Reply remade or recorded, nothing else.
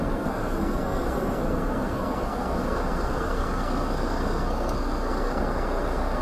remade